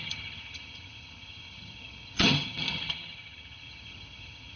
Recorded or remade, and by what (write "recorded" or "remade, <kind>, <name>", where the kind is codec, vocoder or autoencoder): remade, vocoder, HiFi-GAN